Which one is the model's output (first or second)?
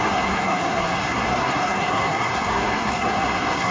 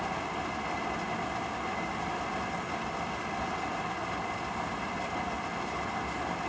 first